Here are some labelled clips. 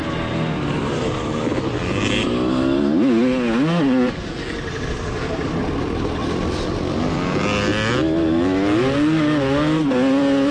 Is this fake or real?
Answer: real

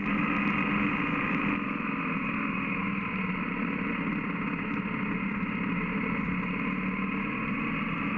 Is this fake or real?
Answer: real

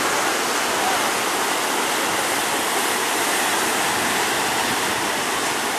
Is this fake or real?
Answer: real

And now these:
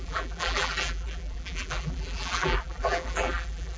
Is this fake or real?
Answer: fake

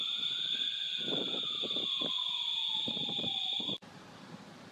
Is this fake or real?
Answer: fake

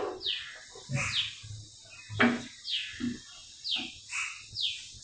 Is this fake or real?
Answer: real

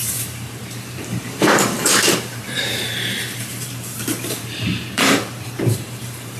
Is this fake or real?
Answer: fake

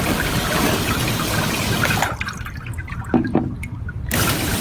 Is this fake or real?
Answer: fake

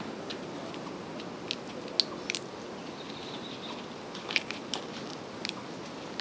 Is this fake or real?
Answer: real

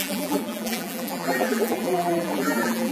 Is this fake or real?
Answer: fake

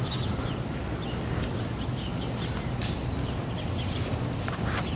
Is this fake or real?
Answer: fake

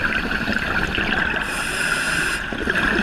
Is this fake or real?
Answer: real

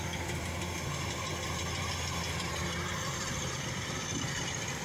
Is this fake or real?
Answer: fake